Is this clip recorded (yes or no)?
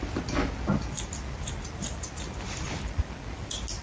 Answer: yes